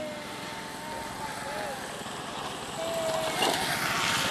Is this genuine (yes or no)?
yes